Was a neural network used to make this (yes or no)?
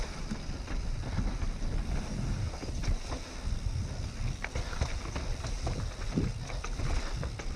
no